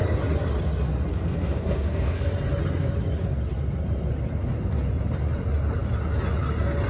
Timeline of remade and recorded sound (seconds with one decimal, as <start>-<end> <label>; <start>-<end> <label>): 0.0-1.1 recorded; 1.1-2.3 remade; 2.3-6.9 recorded